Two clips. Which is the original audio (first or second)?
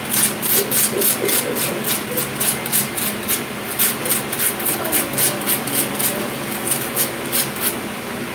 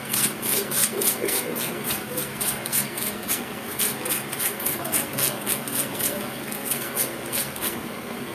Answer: first